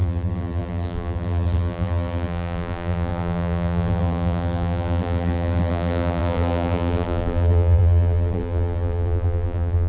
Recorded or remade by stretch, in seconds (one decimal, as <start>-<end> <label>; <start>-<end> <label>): 0.0-9.9 remade